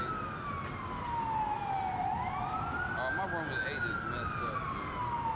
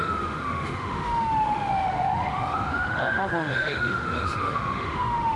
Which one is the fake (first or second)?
second